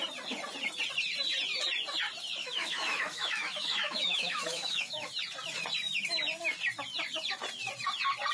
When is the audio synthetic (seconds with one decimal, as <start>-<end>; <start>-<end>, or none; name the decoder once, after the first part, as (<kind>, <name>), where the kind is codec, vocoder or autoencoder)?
2.4-5.1 (autoencoder, DAC-VAE)